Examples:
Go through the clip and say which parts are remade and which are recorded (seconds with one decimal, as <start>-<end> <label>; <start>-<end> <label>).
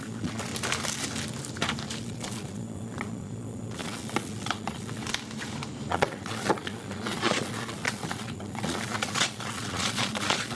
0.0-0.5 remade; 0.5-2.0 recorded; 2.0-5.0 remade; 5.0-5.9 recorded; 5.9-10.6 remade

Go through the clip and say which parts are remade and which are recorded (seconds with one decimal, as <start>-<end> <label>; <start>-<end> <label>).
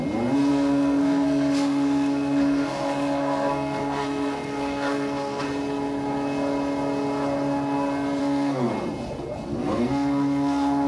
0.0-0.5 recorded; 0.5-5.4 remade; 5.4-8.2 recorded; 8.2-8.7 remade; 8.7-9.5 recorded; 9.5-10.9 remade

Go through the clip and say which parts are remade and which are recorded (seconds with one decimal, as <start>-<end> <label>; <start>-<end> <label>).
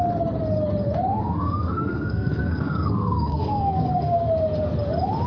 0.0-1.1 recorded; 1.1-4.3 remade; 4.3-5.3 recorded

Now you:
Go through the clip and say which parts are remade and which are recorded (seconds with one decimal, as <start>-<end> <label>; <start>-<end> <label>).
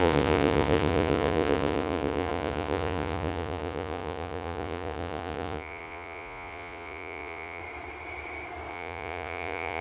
0.0-7.6 remade; 7.6-8.7 recorded; 8.7-9.8 remade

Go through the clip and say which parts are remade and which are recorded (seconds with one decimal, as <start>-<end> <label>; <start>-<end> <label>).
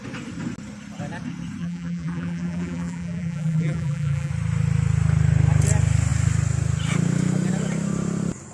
0.0-1.6 recorded; 1.6-4.3 remade; 4.3-8.5 recorded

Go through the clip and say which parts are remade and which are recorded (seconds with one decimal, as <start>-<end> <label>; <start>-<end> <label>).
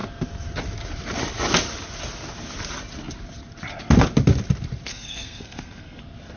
0.0-4.9 recorded; 4.9-6.0 remade; 6.0-6.4 recorded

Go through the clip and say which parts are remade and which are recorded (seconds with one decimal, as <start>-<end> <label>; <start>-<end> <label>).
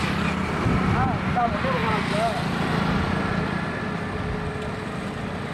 0.0-5.5 recorded